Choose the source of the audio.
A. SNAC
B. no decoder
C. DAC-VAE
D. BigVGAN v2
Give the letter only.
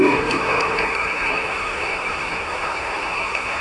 A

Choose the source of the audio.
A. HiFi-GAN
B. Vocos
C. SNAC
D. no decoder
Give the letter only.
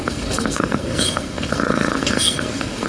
C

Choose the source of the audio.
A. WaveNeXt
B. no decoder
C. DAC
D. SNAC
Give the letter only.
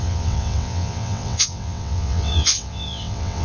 A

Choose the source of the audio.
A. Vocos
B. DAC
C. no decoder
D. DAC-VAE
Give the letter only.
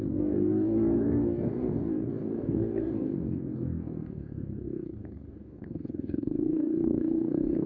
B